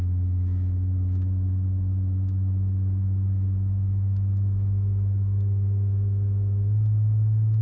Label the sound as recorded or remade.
remade